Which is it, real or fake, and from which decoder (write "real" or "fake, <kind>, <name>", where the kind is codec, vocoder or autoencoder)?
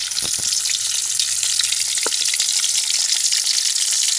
real